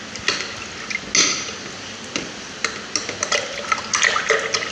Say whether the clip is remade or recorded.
recorded